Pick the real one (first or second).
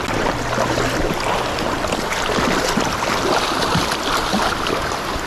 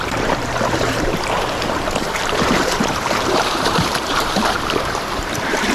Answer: first